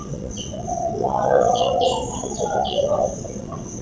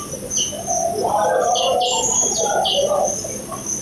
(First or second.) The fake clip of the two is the first